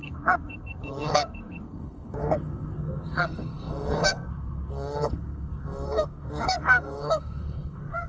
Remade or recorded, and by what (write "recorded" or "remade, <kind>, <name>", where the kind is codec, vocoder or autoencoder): remade, codec, SNAC